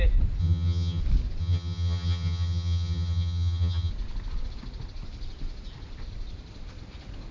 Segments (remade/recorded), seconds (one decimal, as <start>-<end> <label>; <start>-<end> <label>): 0.0-0.4 recorded; 0.4-1.0 remade; 1.0-1.4 recorded; 1.4-3.9 remade; 3.9-7.3 recorded